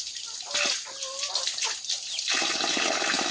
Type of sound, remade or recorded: recorded